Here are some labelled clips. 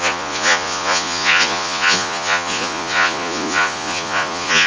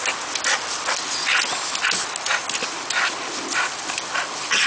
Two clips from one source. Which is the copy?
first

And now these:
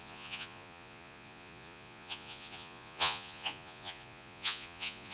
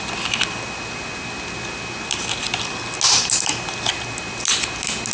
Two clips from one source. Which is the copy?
first